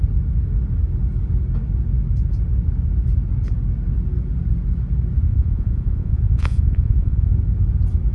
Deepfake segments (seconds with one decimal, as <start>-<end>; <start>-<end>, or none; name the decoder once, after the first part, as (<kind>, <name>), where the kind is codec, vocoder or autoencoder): 5.3-7.3 (vocoder, Vocos)